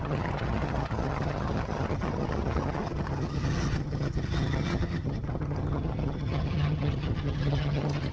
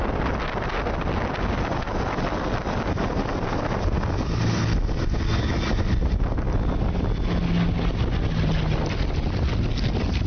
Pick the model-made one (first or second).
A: first